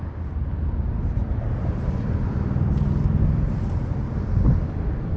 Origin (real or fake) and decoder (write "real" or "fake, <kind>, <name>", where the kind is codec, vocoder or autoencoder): real